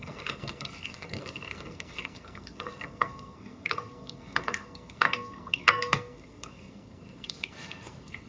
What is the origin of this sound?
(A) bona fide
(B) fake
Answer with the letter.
B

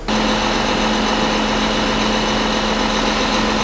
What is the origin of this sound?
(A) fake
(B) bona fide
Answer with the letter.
B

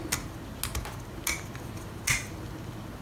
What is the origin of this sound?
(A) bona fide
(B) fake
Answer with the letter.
A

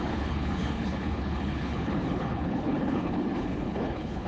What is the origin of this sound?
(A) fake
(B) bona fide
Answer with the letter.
A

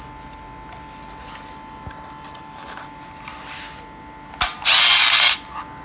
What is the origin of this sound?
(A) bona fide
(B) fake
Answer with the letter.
A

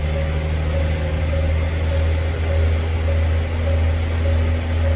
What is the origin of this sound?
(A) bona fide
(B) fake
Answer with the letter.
A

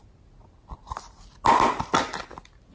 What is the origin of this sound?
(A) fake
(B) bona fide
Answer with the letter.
B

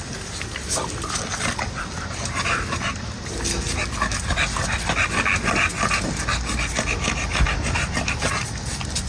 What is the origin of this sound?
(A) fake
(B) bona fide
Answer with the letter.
B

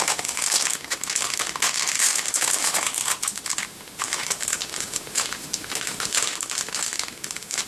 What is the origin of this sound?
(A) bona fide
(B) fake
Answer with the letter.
B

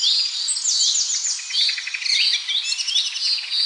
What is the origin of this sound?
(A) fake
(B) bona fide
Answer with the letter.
B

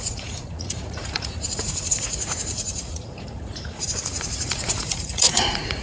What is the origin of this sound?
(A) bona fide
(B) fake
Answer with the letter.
B